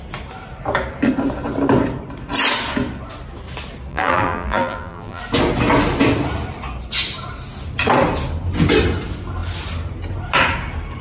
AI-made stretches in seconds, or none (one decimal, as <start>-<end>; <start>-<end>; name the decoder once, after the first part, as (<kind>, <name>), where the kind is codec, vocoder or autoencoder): 3.9-5.2 (vocoder, BigVGAN v2)